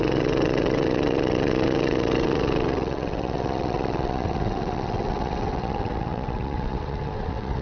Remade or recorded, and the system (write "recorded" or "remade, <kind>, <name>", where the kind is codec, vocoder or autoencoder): remade, vocoder, WaveNeXt